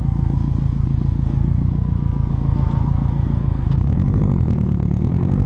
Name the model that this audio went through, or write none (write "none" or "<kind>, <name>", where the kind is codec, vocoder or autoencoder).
codec, SNAC